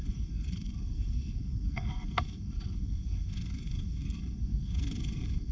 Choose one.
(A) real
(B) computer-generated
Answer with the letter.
B